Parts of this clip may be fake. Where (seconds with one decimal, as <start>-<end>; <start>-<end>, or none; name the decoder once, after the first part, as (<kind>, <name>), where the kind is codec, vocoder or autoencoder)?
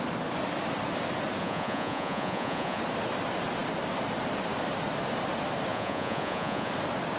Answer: 1.4-2.8 (vocoder, Vocos); 5.7-6.7